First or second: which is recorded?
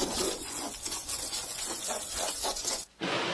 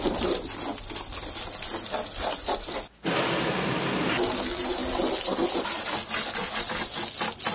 second